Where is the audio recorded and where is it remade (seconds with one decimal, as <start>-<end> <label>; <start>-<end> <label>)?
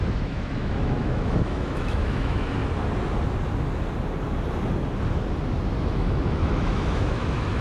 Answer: 0.0-2.6 remade; 2.6-5.8 recorded; 5.8-7.6 remade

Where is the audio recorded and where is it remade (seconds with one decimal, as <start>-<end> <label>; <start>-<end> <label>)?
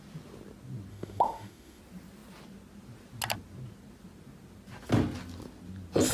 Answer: 0.0-0.9 recorded; 0.9-1.8 remade; 1.8-6.1 recorded